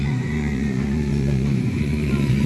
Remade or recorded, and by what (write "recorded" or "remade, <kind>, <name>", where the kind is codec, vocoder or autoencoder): remade, vocoder, Vocos